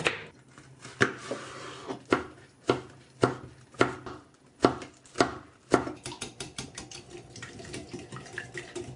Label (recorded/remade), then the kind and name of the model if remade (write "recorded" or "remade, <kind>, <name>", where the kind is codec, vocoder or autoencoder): recorded